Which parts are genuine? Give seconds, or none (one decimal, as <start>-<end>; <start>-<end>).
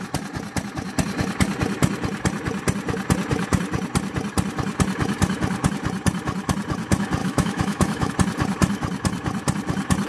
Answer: 0.0-7.2; 8.1-10.1